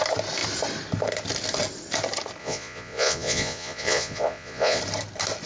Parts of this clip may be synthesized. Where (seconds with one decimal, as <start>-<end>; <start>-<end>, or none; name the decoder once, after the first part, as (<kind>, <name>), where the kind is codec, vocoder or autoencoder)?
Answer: 2.4-4.8 (vocoder, Vocos)